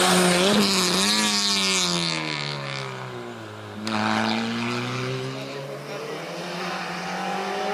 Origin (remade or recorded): recorded